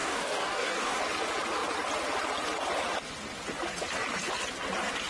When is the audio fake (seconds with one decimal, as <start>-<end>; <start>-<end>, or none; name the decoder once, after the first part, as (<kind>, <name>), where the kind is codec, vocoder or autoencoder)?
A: 0.0-1.0 (codec, DAC)